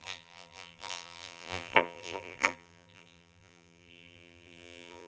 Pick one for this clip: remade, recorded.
remade